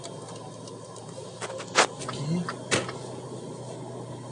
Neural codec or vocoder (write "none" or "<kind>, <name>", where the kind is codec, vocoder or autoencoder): none